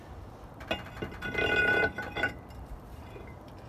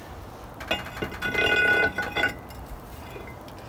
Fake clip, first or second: first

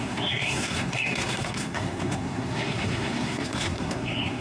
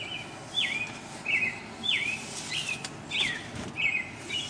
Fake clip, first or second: first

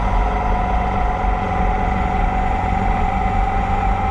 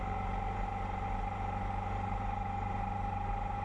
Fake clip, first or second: first